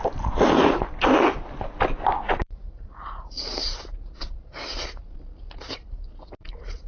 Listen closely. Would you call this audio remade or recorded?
recorded